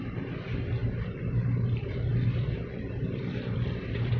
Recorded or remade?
recorded